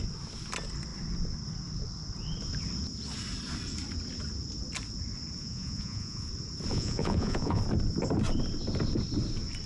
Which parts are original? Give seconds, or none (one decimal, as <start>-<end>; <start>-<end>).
0.0-5.4; 6.3-6.7; 7.6-9.7